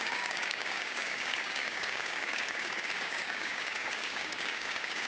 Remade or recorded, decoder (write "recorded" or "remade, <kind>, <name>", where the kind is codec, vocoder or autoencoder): remade, codec, DAC